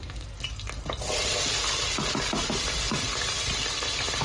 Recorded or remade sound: recorded